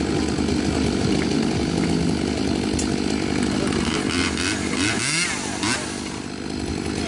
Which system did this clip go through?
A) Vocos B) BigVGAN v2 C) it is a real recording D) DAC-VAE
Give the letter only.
C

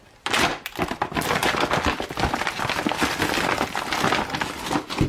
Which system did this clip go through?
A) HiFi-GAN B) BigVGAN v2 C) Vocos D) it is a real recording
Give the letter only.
D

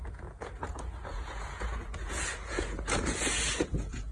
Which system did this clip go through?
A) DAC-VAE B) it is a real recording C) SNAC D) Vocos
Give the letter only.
D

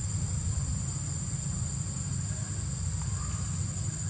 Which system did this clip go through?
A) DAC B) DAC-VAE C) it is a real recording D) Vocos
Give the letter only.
C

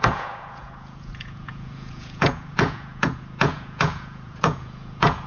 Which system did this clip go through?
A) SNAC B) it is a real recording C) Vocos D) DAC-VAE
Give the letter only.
C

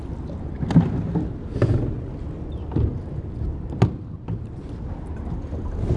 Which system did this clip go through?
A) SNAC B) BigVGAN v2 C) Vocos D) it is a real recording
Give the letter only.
D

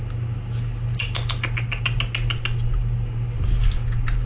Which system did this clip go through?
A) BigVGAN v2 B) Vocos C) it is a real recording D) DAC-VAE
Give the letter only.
C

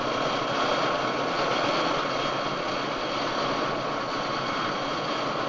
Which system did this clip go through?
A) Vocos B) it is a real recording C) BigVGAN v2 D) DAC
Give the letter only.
A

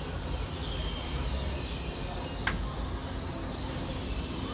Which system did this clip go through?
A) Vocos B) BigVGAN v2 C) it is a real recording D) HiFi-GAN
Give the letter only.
C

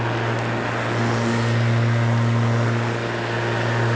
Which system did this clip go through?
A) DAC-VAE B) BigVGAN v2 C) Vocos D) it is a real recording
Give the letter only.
D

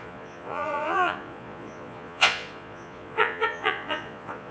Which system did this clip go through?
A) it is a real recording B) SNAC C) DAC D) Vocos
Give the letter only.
D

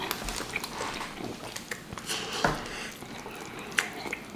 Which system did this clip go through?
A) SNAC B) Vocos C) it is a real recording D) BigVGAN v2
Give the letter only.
C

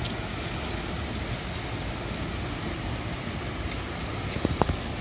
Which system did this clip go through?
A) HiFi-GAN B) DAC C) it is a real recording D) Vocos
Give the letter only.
C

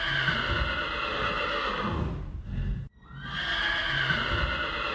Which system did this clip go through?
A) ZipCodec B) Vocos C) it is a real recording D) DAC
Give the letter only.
C